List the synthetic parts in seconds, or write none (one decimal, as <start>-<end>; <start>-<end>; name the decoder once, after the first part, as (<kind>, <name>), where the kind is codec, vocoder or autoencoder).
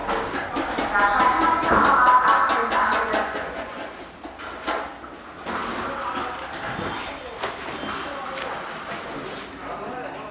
2.8-4.0 (vocoder, Vocos)